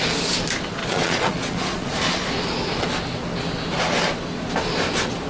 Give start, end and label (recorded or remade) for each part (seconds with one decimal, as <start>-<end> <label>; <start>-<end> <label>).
0.0-0.8 recorded; 0.8-2.2 remade; 2.2-5.3 recorded